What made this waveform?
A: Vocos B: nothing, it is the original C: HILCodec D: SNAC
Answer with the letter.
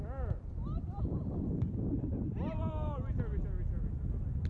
B